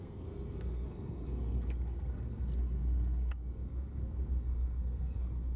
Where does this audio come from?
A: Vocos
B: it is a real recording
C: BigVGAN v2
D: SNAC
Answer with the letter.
D